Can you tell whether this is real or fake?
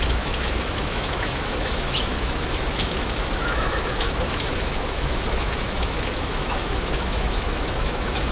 fake